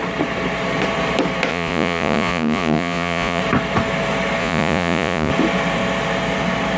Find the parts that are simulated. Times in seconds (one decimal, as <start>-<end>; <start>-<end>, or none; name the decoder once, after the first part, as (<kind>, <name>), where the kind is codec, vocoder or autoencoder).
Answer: 1.5-3.4 (vocoder, Vocos); 4.4-5.3